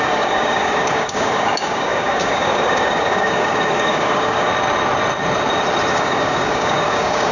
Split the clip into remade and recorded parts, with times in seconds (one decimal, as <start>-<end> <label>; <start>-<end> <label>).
0.0-4.5 remade; 4.5-5.9 recorded; 5.9-7.3 remade

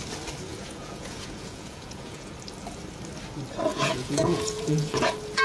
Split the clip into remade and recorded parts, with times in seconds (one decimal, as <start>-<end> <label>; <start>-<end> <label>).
0.0-0.5 recorded; 0.5-2.3 remade; 2.3-3.7 recorded; 3.7-5.4 remade

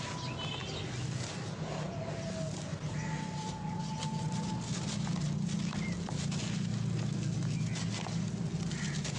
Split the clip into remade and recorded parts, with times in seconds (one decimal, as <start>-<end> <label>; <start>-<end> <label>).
0.0-9.2 recorded

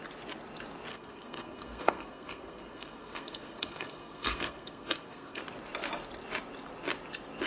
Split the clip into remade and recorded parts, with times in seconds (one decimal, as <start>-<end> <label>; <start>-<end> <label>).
0.0-0.9 recorded; 0.9-5.4 remade; 5.4-7.5 recorded

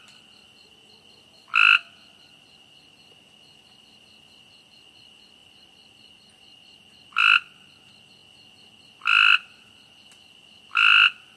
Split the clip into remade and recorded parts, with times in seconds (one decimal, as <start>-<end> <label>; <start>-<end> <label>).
0.0-5.4 recorded; 5.4-7.7 remade; 7.7-11.4 recorded